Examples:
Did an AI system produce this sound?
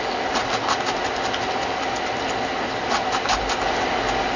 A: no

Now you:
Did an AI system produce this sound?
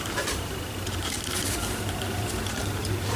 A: yes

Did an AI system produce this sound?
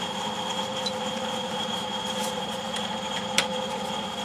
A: yes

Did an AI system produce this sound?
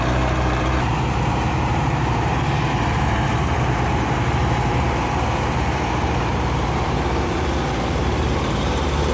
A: yes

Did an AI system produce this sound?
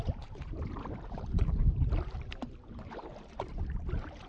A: yes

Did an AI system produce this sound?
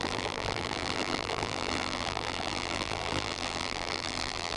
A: yes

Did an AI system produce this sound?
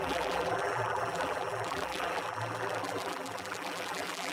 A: yes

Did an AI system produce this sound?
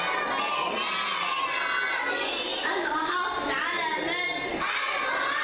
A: no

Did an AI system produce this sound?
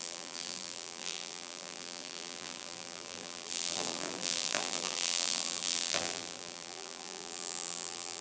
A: yes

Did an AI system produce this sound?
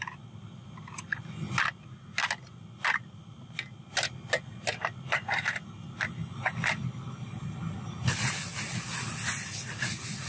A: no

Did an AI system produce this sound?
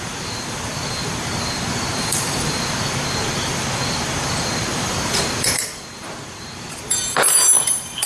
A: yes